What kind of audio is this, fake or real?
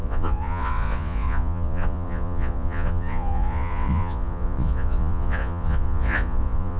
fake